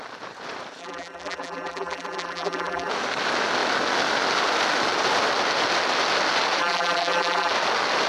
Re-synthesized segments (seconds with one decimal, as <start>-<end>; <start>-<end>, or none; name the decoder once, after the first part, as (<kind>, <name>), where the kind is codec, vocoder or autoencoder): 0.8-2.9 (vocoder, BigVGAN v2); 6.6-7.5

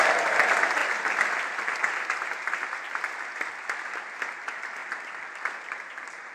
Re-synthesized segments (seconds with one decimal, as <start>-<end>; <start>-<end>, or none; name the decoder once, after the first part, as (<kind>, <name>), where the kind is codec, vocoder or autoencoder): 4.8-6.3 (vocoder, BigVGAN v2)

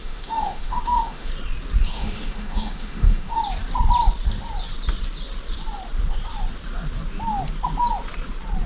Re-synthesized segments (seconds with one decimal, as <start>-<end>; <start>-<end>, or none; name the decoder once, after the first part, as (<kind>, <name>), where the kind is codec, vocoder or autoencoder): 0.0-1.3 (autoencoder, DAC-VAE); 1.8-3.4